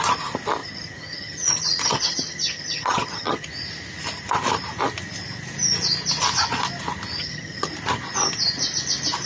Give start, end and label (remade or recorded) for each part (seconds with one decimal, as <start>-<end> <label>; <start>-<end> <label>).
0.0-0.6 recorded; 0.6-3.5 remade; 3.5-7.2 recorded; 7.2-7.7 remade; 7.7-9.3 recorded